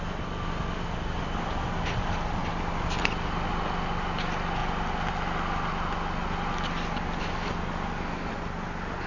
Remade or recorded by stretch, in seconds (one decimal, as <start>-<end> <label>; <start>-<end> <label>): 0.0-9.1 recorded